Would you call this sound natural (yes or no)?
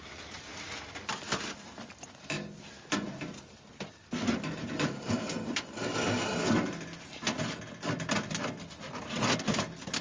yes